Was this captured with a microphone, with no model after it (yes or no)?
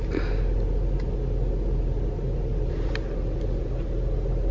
yes